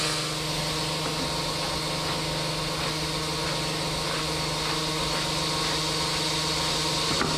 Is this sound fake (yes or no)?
no